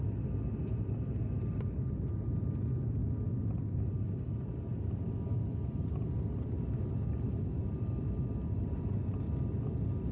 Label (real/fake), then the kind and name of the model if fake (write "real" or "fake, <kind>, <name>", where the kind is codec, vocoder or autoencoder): real